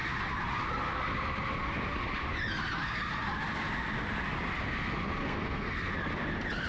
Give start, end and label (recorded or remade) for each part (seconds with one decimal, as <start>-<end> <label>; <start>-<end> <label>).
0.0-5.2 recorded; 5.2-5.9 remade; 5.9-6.7 recorded